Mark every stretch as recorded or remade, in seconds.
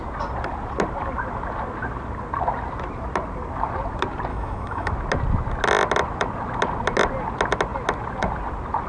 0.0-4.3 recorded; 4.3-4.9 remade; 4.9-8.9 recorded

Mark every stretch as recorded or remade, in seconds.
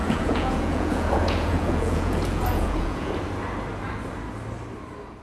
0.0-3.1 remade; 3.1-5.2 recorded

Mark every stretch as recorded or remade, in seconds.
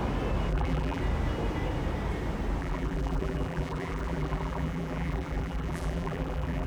0.0-0.5 recorded; 0.5-1.0 remade; 1.0-2.6 recorded; 2.6-6.7 remade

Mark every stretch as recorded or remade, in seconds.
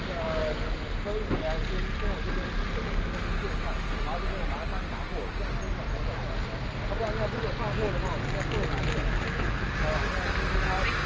0.0-11.1 recorded